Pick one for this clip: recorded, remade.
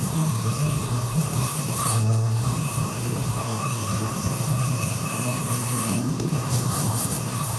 remade